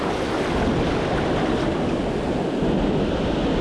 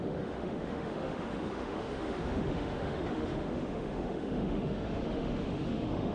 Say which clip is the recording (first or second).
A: first